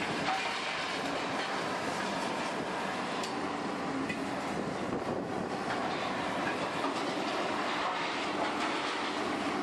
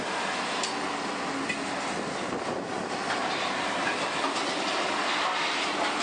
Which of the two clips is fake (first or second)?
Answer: first